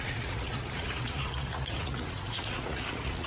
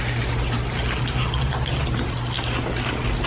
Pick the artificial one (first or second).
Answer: first